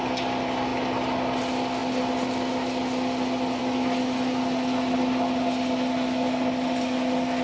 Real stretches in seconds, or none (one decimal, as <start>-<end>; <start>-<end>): 0.0-7.4